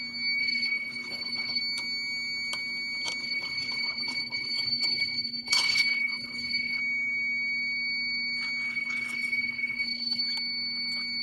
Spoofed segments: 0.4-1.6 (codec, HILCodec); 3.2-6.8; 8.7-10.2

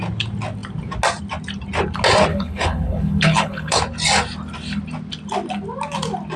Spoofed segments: 2.3-3.8 (codec, HILCodec)

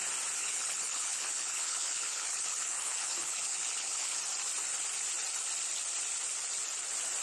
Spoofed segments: 0.4-4.2 (codec, HILCodec)

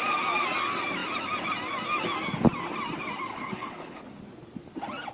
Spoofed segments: 3.3-4.0 (codec, HILCodec)

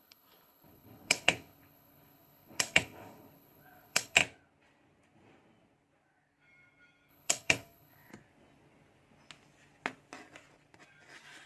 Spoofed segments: 0.0-4.2 (codec, HILCodec); 7.1-8.1